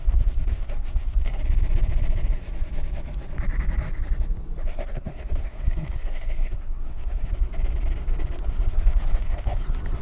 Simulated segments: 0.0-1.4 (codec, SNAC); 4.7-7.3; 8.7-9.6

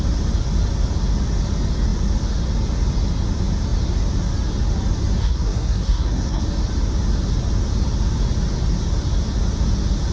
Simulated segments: 5.2-6.4 (codec, SNAC)

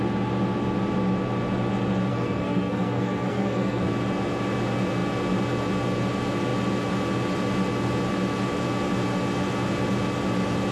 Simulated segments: 2.1-3.9 (codec, SNAC)

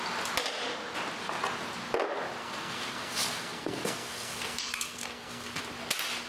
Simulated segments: 2.4-5.6 (codec, SNAC)

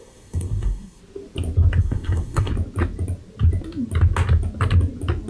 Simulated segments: 0.0-1.0 (codec, SNAC); 1.8-2.5

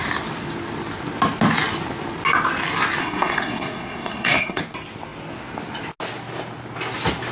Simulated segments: 3.0-4.6 (codec, SNAC)